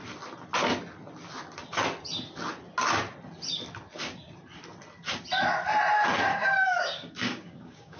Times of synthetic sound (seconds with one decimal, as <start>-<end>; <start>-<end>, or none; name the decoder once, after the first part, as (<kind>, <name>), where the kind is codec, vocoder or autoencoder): 6.3-8.0 (codec, DAC)